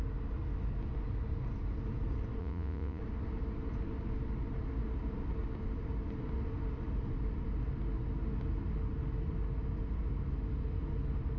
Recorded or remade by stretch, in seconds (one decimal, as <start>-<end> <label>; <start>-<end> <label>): 0.0-2.4 recorded; 2.4-3.0 remade; 3.0-11.4 recorded